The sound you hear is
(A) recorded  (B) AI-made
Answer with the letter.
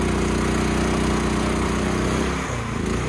A